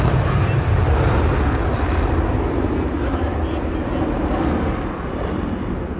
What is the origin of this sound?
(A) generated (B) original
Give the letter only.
B